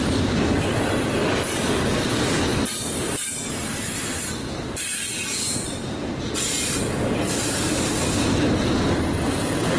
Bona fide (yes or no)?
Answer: yes